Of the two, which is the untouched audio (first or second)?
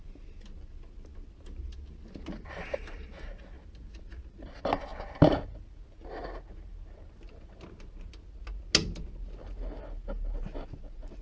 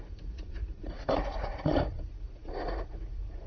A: first